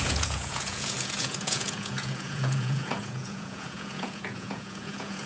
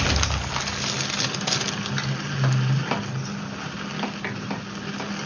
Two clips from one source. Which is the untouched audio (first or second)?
second